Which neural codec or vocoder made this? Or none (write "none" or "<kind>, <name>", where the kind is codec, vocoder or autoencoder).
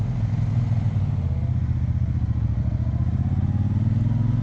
none